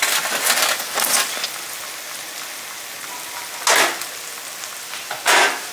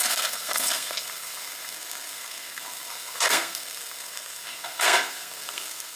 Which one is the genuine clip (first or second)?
first